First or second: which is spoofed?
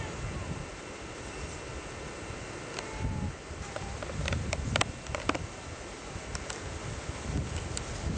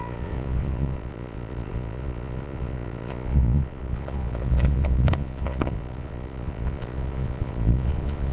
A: second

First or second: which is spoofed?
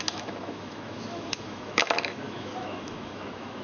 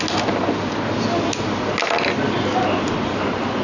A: first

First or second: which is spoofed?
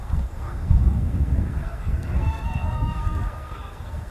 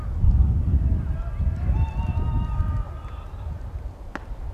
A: first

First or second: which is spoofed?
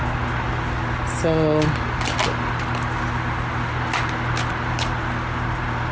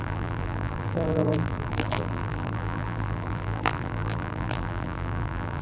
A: second